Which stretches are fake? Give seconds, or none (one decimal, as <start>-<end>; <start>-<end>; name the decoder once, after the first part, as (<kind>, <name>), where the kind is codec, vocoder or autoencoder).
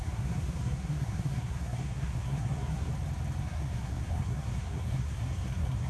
0.0-2.9 (codec, SNAC); 3.4-5.9